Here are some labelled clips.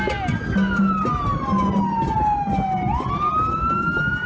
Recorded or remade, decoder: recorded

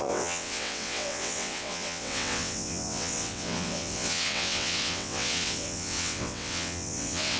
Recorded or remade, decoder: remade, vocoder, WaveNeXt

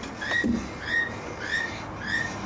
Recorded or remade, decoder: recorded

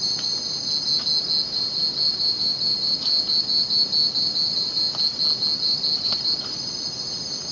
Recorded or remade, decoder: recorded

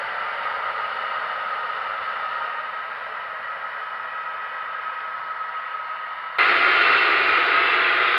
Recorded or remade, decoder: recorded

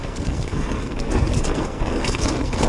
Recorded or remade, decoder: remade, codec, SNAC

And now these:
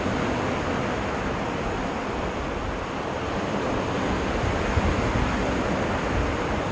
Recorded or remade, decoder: recorded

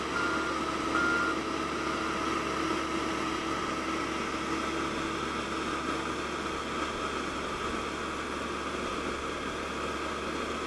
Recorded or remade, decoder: recorded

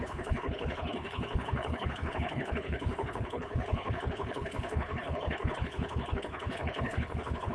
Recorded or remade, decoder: remade, codec, HILCodec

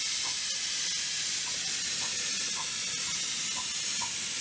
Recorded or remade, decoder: recorded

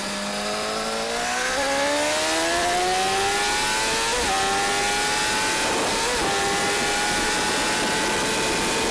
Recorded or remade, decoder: recorded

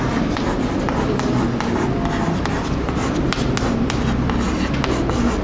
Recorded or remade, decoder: recorded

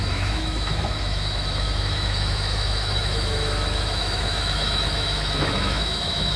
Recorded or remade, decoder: remade, autoencoder, DAC-VAE